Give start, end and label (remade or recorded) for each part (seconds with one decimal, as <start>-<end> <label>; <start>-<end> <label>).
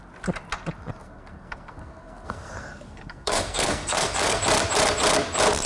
0.0-1.0 recorded; 1.0-4.4 remade; 4.4-5.7 recorded